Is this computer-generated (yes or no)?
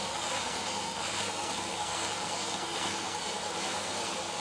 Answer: yes